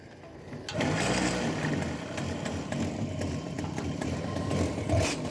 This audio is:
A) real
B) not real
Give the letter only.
A